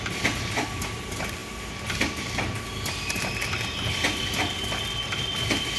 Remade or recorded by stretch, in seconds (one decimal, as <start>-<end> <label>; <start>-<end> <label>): 0.0-5.8 recorded